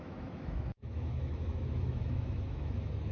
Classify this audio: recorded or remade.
remade